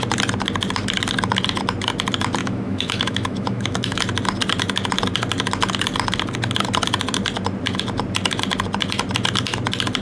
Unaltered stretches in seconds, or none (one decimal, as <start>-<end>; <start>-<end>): 0.0-2.4; 4.0-10.0